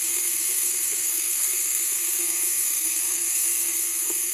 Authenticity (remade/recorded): remade